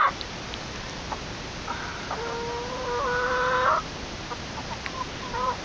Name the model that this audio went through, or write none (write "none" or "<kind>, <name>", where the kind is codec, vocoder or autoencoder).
none